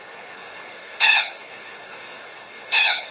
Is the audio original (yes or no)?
no